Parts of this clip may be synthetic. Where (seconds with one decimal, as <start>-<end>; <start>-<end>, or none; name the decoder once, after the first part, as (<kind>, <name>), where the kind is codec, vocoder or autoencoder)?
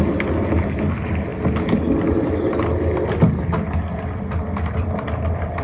none